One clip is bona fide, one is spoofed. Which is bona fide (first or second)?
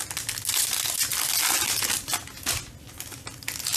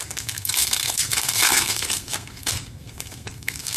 first